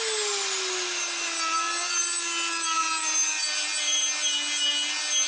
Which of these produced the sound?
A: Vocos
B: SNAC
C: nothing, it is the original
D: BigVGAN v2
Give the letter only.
C